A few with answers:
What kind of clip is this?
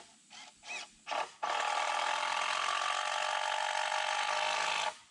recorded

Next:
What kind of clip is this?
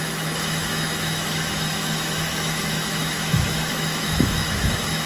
remade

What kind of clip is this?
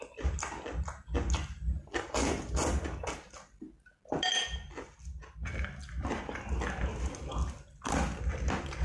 recorded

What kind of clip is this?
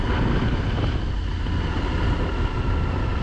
recorded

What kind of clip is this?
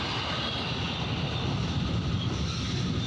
recorded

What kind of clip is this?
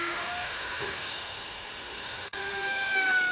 remade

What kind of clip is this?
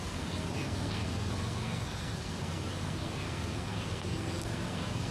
remade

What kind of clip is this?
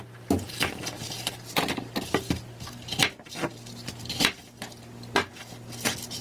recorded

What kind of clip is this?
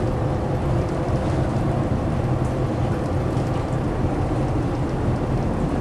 remade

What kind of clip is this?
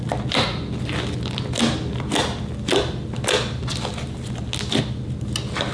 recorded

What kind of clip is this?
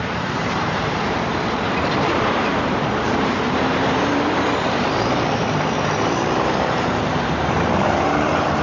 remade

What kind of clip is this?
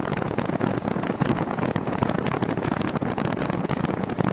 remade